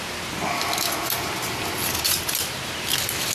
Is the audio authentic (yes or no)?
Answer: yes